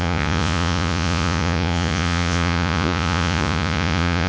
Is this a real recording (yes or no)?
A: no